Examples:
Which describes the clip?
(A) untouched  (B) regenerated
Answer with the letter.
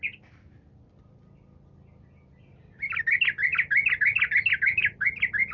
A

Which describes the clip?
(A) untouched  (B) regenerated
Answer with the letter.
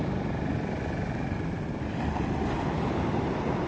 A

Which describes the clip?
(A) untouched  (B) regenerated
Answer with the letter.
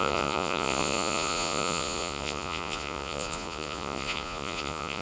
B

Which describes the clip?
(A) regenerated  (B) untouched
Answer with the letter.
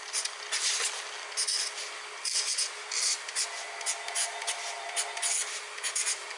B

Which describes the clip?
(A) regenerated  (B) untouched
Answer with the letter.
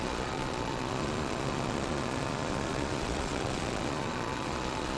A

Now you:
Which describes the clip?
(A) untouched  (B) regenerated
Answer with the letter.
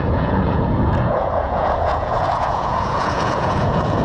B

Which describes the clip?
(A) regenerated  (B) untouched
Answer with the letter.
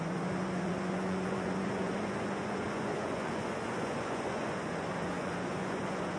A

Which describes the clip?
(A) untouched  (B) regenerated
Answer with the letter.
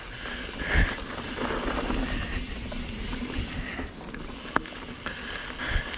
A